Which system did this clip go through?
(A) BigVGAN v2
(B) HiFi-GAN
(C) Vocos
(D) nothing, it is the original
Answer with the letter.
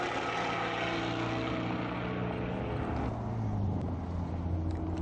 D